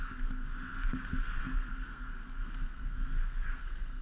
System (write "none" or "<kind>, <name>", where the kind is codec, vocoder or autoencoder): codec, SNAC